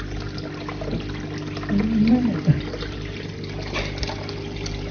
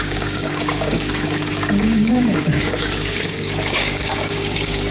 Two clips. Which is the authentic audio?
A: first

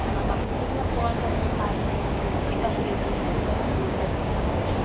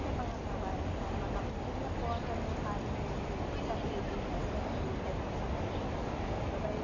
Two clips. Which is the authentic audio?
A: second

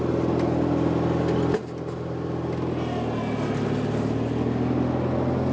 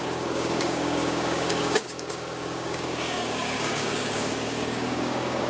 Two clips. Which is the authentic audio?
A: first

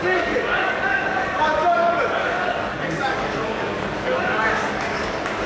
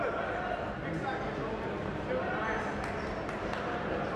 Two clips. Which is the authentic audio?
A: second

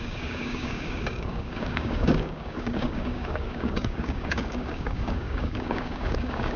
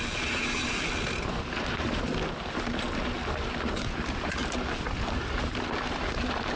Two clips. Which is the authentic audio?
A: second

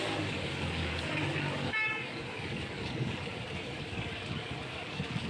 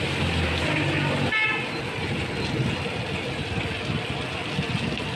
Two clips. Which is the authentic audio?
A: second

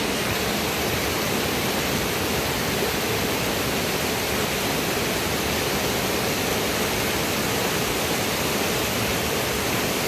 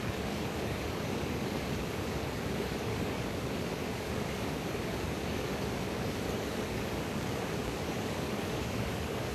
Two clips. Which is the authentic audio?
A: first